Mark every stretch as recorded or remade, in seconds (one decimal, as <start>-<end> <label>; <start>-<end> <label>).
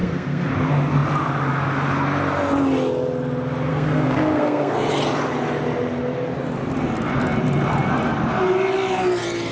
0.0-0.5 remade; 0.5-3.7 recorded; 3.7-4.9 remade; 4.9-9.5 recorded